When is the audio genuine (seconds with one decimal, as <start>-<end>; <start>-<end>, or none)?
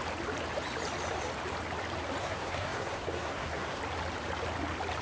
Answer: 0.0-2.2; 3.8-5.0